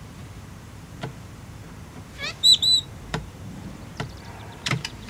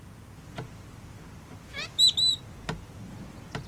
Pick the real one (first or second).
second